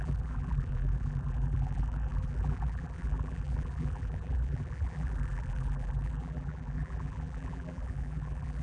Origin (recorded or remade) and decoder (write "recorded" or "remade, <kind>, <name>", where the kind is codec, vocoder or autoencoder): remade, vocoder, BigVGAN v2